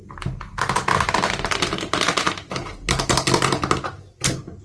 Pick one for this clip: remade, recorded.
recorded